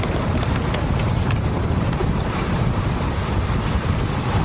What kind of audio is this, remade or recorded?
recorded